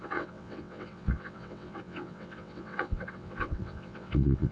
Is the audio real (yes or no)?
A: no